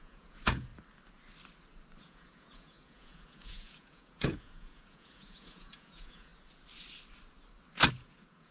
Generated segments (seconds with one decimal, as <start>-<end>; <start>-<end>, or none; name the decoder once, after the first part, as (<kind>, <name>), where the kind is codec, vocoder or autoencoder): 0.0-0.7 (vocoder, Vocos); 2.0-6.3; 7.9-8.5